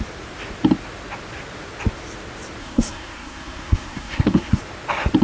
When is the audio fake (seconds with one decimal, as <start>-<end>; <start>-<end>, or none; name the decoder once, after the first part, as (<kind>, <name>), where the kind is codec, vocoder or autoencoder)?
2.6-4.6 (codec, SNAC)